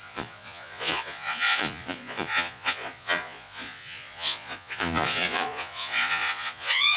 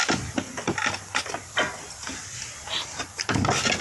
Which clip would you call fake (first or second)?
first